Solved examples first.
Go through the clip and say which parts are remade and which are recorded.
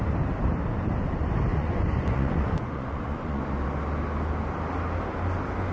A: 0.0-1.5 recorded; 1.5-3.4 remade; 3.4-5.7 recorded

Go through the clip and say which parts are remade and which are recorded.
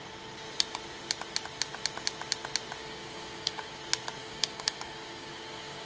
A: 0.0-2.8 recorded; 2.8-3.8 remade; 3.8-4.2 recorded; 4.2-5.9 remade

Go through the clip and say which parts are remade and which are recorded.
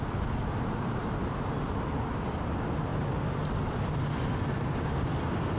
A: 0.0-5.6 recorded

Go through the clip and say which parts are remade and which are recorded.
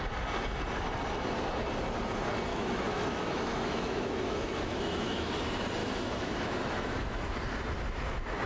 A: 0.0-2.5 recorded; 2.5-5.3 remade; 5.3-5.8 recorded; 5.8-7.3 remade; 7.3-8.5 recorded